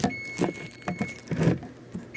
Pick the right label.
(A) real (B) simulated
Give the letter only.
A